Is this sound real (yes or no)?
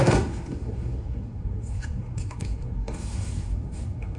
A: no